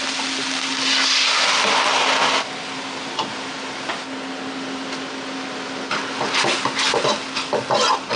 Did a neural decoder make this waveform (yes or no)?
no